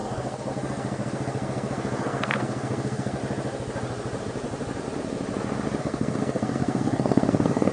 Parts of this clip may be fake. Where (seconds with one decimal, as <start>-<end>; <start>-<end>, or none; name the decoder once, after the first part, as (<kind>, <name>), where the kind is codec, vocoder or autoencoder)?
0.0-3.2 (codec, SNAC); 5.8-7.7